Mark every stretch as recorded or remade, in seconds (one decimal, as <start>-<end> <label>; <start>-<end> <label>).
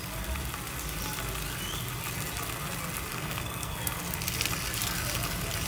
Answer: 0.0-3.1 recorded; 3.1-3.8 remade; 3.8-5.7 recorded